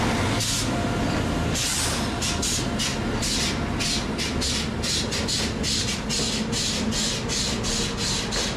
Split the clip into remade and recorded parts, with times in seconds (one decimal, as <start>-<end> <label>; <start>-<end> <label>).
0.0-8.6 recorded